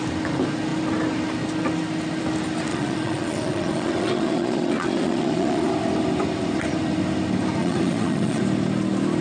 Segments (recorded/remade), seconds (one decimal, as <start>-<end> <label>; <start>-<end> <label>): 0.0-2.7 recorded; 2.7-5.7 remade; 5.7-7.6 recorded; 7.6-8.4 remade; 8.4-9.2 recorded